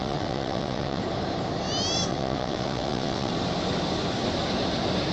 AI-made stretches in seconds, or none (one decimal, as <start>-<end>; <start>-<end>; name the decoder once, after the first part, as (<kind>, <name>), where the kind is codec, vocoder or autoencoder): 0.0-1.0 (vocoder, WaveNeXt); 2.1-3.3